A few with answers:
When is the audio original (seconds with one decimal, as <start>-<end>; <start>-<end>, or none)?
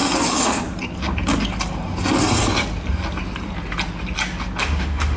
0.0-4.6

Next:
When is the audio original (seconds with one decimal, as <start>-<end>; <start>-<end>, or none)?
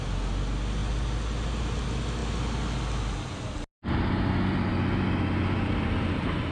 0.0-6.5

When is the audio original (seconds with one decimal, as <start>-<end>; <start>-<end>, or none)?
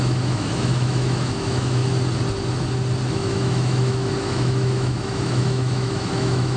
1.8-3.1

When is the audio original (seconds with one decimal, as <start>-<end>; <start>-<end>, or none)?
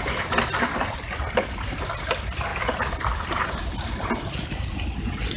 0.0-5.4